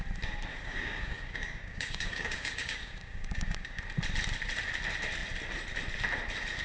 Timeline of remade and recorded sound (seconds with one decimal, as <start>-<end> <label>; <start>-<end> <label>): 0.0-0.5 recorded; 0.5-3.8 remade; 3.8-6.6 recorded